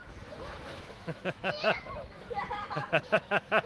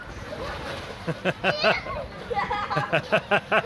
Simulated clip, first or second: first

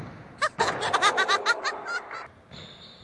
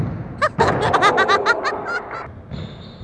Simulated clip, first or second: first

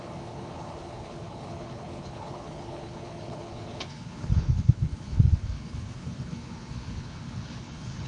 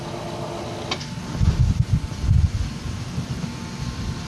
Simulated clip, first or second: first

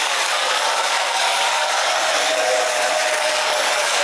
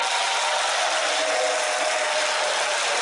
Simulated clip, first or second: first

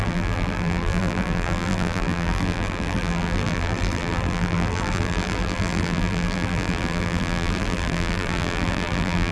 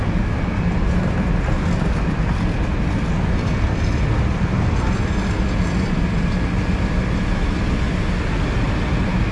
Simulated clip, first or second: first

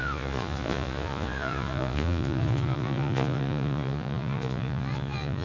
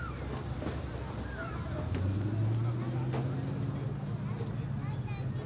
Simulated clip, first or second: first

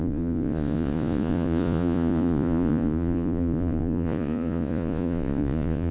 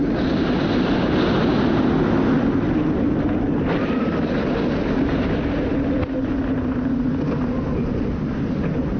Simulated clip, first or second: first